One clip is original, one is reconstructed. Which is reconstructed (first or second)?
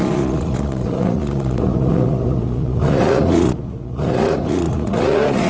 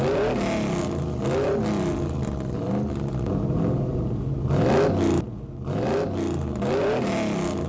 first